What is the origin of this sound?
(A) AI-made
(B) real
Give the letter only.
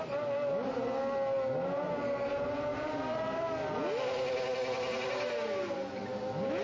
B